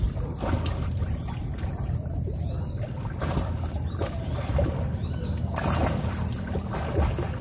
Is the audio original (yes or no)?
yes